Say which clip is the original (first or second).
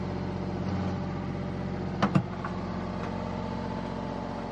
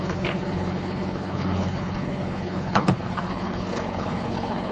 first